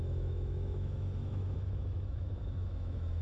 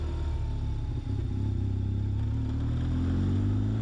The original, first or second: second